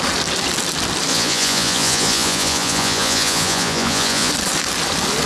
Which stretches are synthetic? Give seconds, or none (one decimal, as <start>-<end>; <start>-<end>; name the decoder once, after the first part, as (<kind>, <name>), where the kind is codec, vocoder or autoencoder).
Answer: 1.1-4.3 (vocoder, Vocos)